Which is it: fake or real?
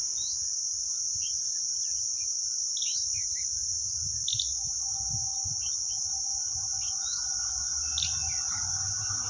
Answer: real